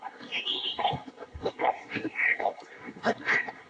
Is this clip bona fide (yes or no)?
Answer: no